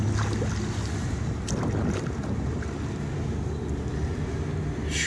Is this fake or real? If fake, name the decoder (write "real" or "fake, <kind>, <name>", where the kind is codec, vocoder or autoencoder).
real